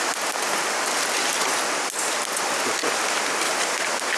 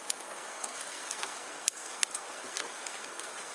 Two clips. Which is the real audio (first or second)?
first